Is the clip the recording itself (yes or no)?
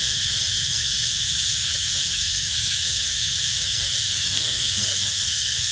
no